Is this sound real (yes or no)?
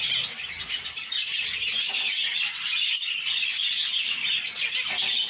yes